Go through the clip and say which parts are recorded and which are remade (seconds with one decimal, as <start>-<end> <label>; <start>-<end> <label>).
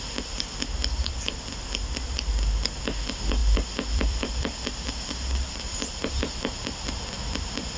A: 0.0-3.4 recorded; 3.4-6.1 remade; 6.1-7.8 recorded